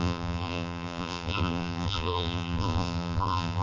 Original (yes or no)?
no